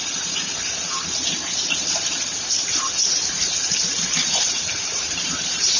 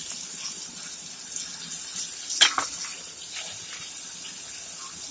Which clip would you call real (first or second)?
second